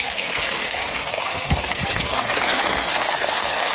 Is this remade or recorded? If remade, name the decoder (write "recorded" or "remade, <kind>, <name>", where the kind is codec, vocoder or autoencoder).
remade, codec, SNAC